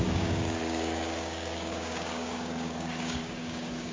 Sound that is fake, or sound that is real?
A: fake